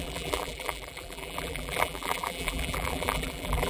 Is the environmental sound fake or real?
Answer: fake